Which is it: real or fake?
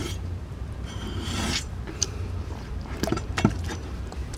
fake